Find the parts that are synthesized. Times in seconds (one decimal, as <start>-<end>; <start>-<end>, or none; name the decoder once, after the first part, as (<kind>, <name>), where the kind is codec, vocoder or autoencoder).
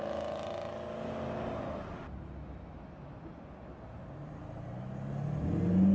none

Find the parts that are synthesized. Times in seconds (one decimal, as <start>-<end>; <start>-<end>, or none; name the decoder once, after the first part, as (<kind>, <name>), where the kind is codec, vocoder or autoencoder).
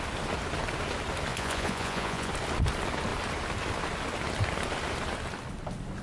1.3-2.3 (vocoder, Vocos)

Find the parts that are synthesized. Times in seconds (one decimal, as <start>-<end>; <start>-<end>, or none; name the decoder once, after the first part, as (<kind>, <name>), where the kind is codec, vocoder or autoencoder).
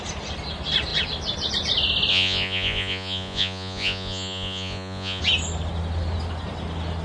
2.1-5.2 (vocoder, Vocos)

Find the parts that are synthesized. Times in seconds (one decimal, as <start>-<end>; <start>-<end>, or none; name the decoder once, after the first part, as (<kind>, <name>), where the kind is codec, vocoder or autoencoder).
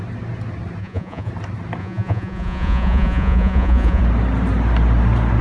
0.8-1.3 (vocoder, Vocos); 1.8-4.0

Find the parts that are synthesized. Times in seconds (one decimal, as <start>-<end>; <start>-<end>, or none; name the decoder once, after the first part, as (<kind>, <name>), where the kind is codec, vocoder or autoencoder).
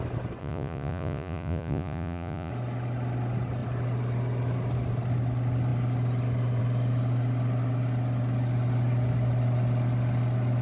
0.4-2.5 (vocoder, Vocos)